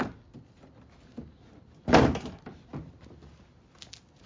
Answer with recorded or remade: recorded